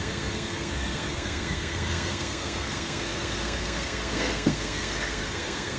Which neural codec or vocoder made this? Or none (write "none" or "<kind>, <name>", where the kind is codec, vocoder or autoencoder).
codec, SNAC